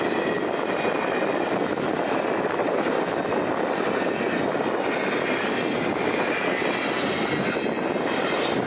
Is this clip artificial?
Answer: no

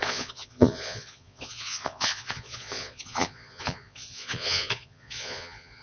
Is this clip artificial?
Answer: yes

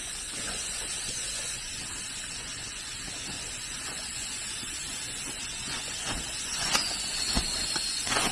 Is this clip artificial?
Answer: yes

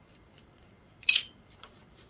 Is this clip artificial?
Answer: yes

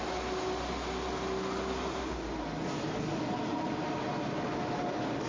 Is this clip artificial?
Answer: no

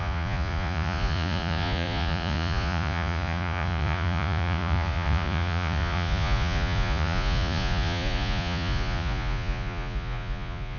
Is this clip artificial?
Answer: yes